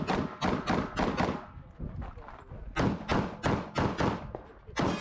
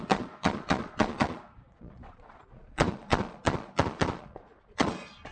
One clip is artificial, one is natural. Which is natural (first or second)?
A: first